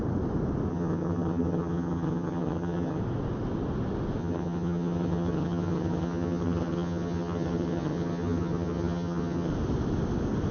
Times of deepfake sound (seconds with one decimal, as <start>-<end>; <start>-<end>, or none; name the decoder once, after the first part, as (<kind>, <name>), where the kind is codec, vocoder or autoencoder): 0.7-3.0 (vocoder, HiFi-GAN); 4.2-9.5